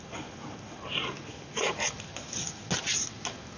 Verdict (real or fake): real